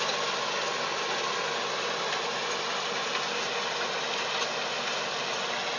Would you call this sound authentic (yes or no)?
yes